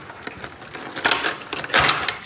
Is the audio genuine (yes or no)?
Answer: yes